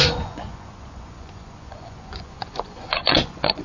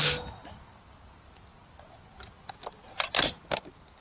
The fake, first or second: first